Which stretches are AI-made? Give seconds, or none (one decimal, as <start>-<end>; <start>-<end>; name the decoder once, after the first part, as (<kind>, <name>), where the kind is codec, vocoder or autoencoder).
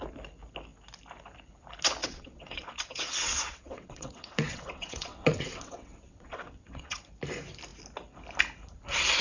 2.0-7.0 (vocoder, WaveNeXt)